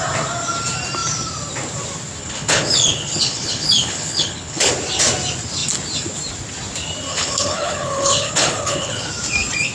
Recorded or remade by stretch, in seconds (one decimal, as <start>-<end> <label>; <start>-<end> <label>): 0.0-2.2 recorded; 2.2-4.7 remade; 4.7-7.1 recorded; 7.1-9.1 remade; 9.1-9.7 recorded